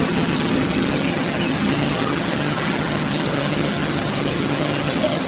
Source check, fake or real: fake